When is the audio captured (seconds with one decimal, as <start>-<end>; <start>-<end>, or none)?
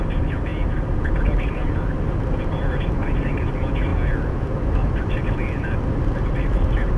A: 0.0-7.0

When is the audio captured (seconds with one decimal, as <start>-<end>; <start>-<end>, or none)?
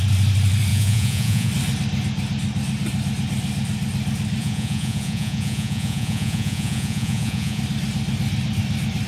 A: 0.0-0.7; 1.5-4.4; 7.6-9.1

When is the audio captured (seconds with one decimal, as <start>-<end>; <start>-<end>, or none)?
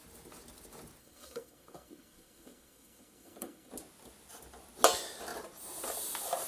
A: 0.0-1.0; 3.7-6.5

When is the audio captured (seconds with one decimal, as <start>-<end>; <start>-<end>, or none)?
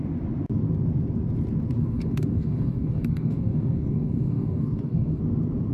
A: 0.0-1.8; 5.2-5.7